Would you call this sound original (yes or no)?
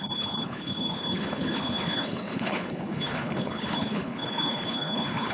no